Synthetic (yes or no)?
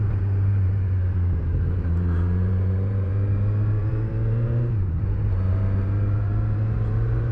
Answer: yes